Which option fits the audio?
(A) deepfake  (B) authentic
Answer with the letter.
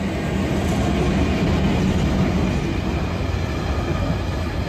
B